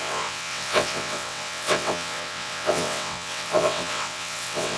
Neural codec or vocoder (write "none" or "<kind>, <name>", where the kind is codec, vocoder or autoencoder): vocoder, WaveNeXt